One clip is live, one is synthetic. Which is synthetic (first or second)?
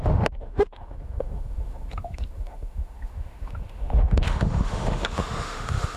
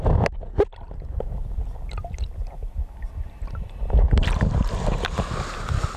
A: first